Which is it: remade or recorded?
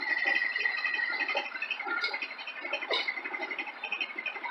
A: recorded